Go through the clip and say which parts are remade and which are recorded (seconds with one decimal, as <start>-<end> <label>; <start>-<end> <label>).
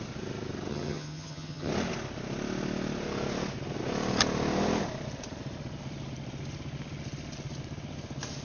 0.0-0.7 recorded; 0.7-1.7 remade; 1.7-8.4 recorded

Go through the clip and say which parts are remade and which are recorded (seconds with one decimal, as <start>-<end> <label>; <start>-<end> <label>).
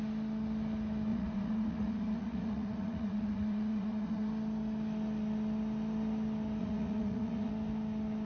0.0-1.1 recorded; 1.1-4.3 remade; 4.3-6.6 recorded; 6.6-7.5 remade; 7.5-8.2 recorded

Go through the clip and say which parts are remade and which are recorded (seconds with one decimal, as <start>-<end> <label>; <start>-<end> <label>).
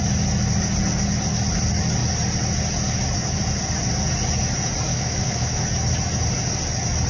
0.0-4.9 recorded; 4.9-5.6 remade; 5.6-7.1 recorded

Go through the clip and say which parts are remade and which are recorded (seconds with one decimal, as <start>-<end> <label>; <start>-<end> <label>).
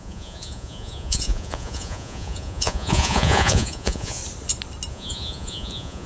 0.0-4.2 remade; 4.2-4.9 recorded; 4.9-6.1 remade